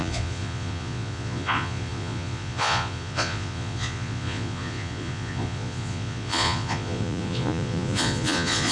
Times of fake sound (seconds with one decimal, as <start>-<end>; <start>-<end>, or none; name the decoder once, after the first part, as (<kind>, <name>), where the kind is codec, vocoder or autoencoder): 0.0-8.7 (vocoder, Vocos)